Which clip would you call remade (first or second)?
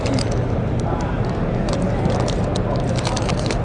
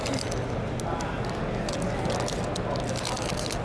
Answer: first